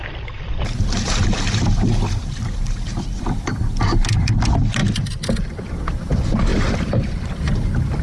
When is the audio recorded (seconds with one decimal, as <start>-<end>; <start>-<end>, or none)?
none